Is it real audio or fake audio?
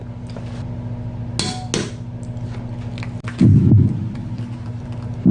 real